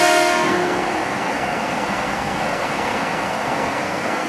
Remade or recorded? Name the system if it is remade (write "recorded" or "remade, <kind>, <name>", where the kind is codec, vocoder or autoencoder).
remade, codec, SNAC